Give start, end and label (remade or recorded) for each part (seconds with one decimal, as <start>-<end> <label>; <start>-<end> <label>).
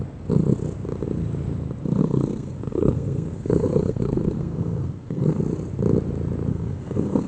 0.0-2.0 recorded; 2.0-5.4 remade; 5.4-6.5 recorded; 6.5-7.3 remade